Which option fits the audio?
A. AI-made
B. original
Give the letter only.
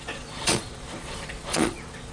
A